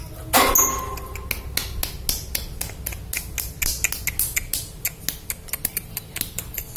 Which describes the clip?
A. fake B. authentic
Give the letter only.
B